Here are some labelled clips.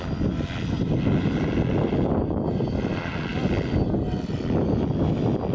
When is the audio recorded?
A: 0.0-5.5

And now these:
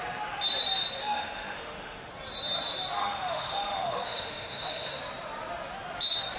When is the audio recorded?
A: 0.0-1.0; 2.1-3.0; 5.0-6.4

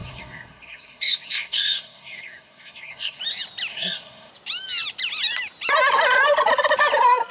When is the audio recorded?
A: 3.2-3.7; 4.3-7.3

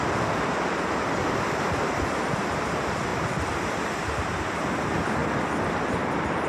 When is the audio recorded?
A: 0.0-3.1; 4.4-6.5

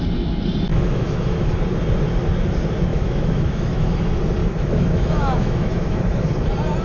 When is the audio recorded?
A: 0.0-0.7; 1.6-2.9; 4.0-4.4; 6.3-6.8

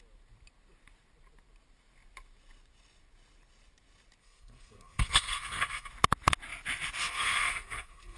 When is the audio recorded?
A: 0.0-4.2; 5.9-7.0

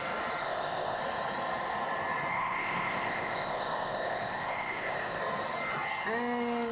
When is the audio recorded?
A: 0.0-0.4; 1.0-2.3; 5.2-6.7

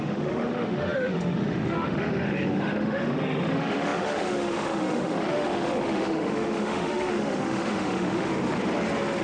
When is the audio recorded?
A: 8.3-9.2